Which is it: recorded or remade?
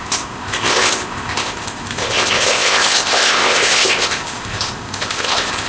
remade